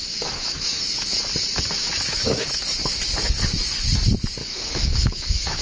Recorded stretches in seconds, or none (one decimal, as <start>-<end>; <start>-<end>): 1.2-1.8; 2.6-4.4